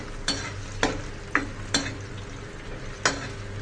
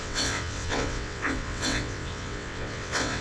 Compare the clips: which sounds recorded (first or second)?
first